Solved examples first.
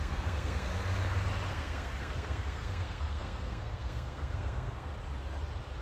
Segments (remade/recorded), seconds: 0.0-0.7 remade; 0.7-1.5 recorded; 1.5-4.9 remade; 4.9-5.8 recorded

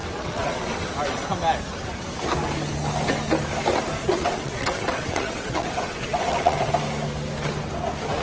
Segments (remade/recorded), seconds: 0.0-0.9 remade; 0.9-4.0 recorded; 4.0-6.7 remade; 6.7-8.2 recorded

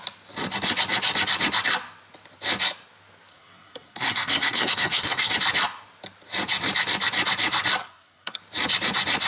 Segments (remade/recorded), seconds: 0.0-3.3 recorded; 3.3-5.3 remade; 5.3-7.8 recorded; 7.8-8.4 remade; 8.4-9.3 recorded

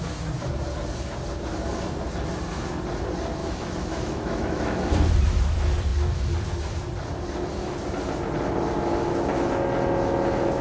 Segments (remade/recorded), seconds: 0.0-3.4 recorded; 3.4-4.8 remade; 4.8-10.6 recorded

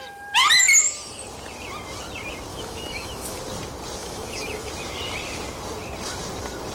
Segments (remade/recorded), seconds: 0.0-2.5 recorded; 2.5-3.4 remade; 3.4-4.0 recorded; 4.0-4.7 remade; 4.7-6.7 recorded